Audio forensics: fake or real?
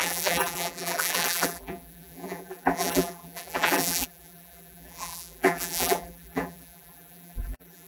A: fake